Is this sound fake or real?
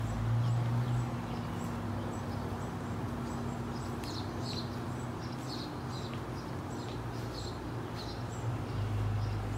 real